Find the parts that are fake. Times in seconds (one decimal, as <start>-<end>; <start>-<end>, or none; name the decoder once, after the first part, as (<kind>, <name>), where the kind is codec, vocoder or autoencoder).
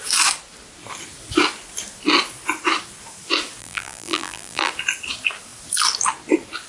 3.6-4.7 (vocoder, BigVGAN v2)